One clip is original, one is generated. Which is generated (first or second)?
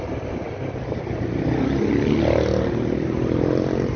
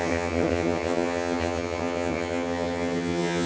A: second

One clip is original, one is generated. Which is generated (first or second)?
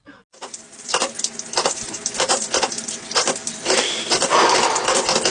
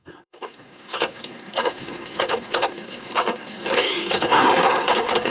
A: second